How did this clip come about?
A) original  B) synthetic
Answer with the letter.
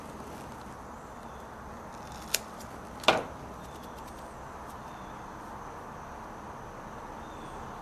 A